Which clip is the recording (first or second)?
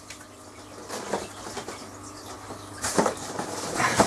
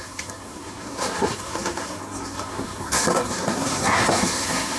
first